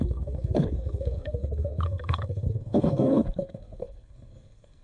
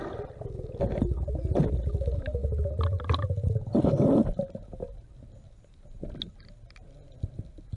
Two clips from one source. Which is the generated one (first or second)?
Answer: first